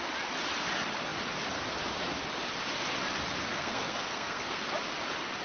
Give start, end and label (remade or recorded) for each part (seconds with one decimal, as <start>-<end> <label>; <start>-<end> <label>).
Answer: 0.0-3.5 recorded; 3.5-4.6 remade; 4.6-5.4 recorded